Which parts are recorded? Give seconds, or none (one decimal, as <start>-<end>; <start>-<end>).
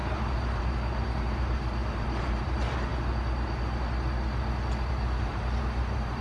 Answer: 2.9-4.9